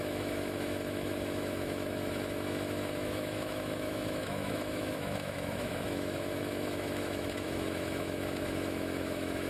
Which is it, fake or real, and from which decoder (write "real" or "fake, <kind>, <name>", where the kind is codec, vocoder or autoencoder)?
fake, autoencoder, DAC-VAE